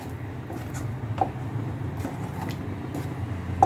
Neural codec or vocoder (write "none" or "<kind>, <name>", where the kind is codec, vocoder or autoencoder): none